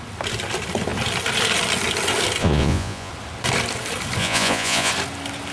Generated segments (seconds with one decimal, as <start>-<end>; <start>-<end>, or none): 2.4-3.1; 4.2-4.9